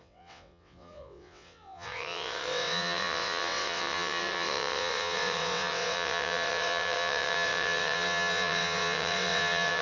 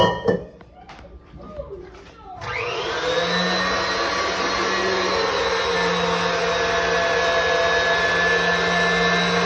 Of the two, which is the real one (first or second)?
second